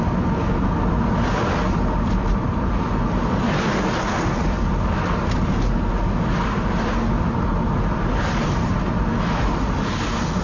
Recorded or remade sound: recorded